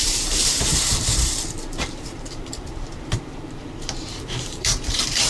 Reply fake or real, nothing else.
fake